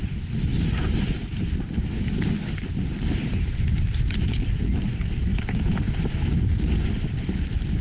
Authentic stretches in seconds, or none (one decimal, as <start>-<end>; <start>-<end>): 0.0-2.9; 3.8-5.3; 6.4-7.8